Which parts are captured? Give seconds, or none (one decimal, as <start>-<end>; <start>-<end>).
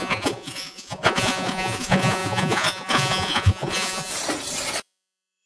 4.1-4.8